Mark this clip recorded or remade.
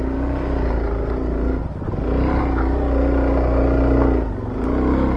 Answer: recorded